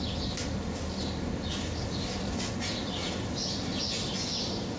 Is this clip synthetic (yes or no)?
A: no